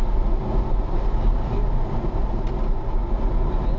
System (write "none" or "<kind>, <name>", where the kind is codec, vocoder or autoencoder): none